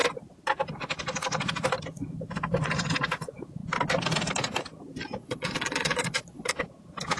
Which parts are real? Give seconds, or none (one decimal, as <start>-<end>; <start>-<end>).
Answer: 0.0-5.2; 6.5-7.2